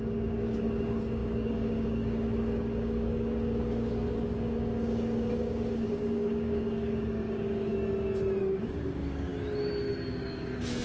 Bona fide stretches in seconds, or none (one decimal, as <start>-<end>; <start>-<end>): 7.7-8.4; 9.3-10.1